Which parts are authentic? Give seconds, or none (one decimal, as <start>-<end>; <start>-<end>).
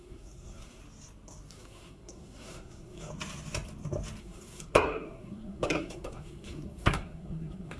0.8-1.5; 3.1-4.2